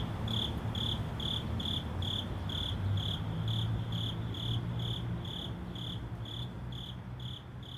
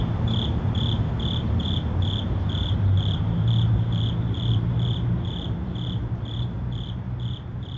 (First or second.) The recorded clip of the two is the first